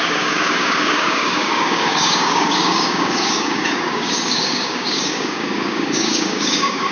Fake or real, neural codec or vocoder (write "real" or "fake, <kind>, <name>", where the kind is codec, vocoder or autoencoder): fake, codec, DAC